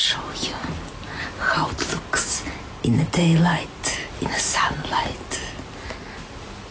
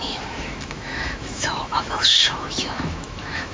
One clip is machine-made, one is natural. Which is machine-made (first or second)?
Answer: second